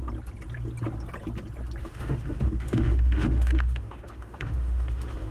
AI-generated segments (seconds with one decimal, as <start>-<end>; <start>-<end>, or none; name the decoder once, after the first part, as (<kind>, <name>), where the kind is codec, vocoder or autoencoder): 1.8-5.3 (autoencoder, DAC-VAE)